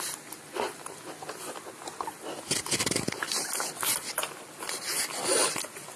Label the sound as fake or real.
real